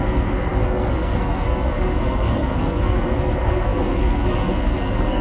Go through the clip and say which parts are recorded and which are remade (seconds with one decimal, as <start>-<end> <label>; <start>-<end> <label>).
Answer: 0.0-5.2 remade